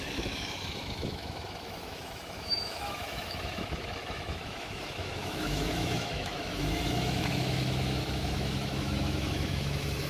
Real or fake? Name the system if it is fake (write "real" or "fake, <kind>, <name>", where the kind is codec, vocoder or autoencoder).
fake, autoencoder, DAC-VAE